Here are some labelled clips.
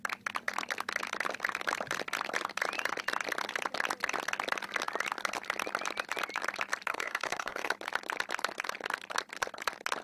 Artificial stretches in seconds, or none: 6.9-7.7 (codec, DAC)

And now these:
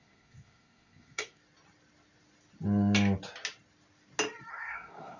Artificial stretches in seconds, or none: 0.0-1.4 (codec, SNAC); 4.5-5.2

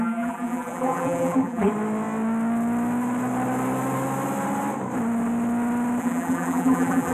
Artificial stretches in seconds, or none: 0.0-1.7 (vocoder, BigVGAN v2); 6.0-7.1

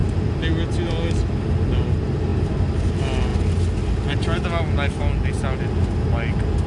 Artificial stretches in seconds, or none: none

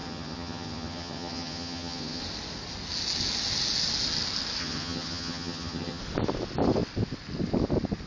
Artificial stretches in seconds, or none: 0.0-2.2 (vocoder, HiFi-GAN); 4.6-6.0

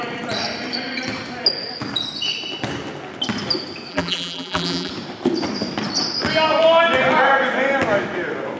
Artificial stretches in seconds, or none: 3.9-4.9 (vocoder, BigVGAN v2)